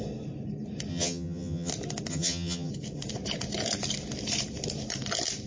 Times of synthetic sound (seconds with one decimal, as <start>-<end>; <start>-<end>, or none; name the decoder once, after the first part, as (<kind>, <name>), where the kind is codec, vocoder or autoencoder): 0.9-1.7 (vocoder, HiFi-GAN); 2.1-2.7